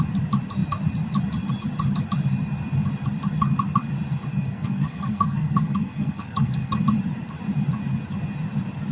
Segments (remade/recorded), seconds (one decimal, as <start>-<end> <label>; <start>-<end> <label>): 0.0-4.3 recorded; 4.3-6.8 remade; 6.8-8.9 recorded